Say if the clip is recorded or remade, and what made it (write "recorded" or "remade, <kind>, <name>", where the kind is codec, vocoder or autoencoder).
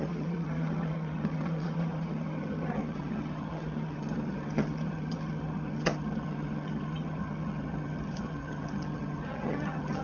remade, vocoder, HiFi-GAN